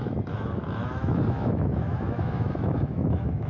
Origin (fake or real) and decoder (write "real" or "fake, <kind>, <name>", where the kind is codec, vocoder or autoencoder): fake, autoencoder, DAC-VAE